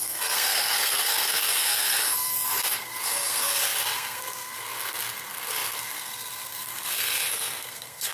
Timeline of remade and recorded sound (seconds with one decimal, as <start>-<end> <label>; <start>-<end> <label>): 0.0-8.1 remade